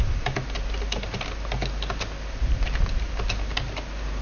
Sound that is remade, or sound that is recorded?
recorded